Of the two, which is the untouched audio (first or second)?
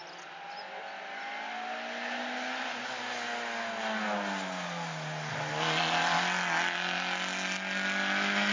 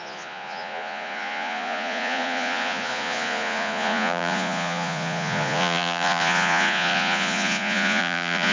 first